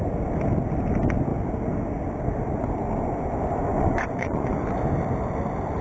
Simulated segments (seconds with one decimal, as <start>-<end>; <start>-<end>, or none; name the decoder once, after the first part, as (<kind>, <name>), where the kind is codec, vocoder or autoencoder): 3.7-4.6 (vocoder, Vocos)